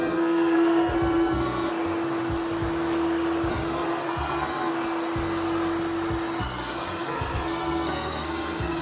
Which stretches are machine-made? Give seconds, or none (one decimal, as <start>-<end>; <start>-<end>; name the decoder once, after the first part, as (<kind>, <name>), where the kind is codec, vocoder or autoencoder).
0.0-1.7 (codec, SNAC); 3.5-4.7; 6.4-8.8